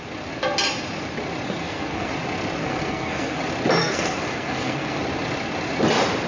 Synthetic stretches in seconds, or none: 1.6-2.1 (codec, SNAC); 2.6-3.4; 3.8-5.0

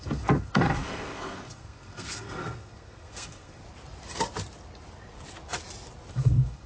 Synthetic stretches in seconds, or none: 0.0-3.6 (codec, SNAC); 6.1-6.7

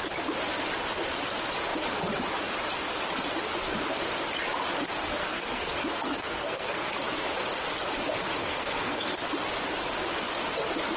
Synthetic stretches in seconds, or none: 5.2-6.9 (codec, SNAC); 8.4-9.2

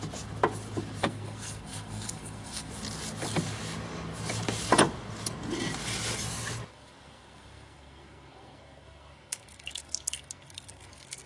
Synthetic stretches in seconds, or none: 1.0-2.7 (codec, SNAC); 6.7-11.3

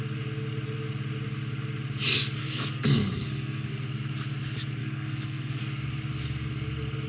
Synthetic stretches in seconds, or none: 2.4-3.7 (codec, SNAC); 4.8-5.6

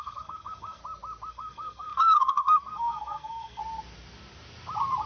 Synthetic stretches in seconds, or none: 0.0-0.8 (codec, SNAC); 1.3-3.6

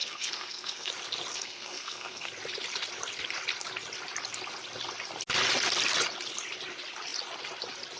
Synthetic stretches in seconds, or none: 0.0-0.9 (codec, SNAC); 1.3-2.3

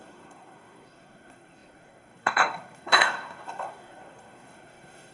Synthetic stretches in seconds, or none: 0.0-5.1 (codec, SNAC)